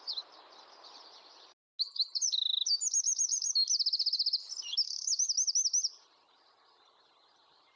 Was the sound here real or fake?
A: real